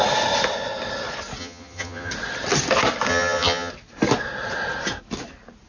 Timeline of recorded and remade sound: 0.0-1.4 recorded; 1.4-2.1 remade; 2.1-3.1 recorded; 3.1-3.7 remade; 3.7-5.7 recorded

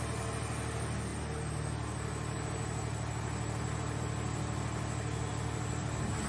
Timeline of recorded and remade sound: 0.0-6.3 recorded

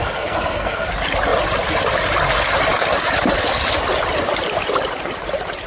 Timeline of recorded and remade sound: 0.0-0.9 remade; 0.9-5.7 recorded

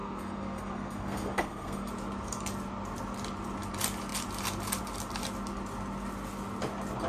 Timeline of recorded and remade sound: 0.0-1.9 remade; 1.9-7.1 recorded

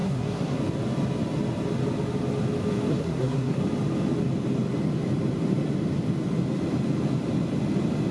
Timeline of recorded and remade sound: 0.0-0.6 remade; 0.6-2.9 recorded; 2.9-3.6 remade; 3.6-8.1 recorded

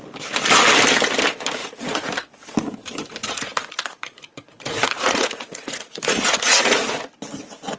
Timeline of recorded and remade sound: 0.0-1.6 recorded; 1.6-2.1 remade; 2.1-3.2 recorded; 3.2-7.0 remade; 7.0-7.8 recorded

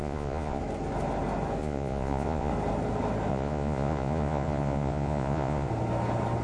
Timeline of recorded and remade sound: 0.0-0.6 remade; 0.6-1.6 recorded; 1.6-2.5 remade; 2.5-3.3 recorded; 3.3-5.7 remade; 5.7-6.4 recorded